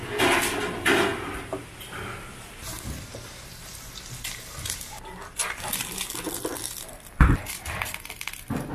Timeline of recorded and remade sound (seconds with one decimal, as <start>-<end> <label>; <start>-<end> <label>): 0.0-8.7 recorded